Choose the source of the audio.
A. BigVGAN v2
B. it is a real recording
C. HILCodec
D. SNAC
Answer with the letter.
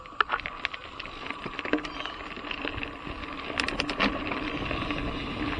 B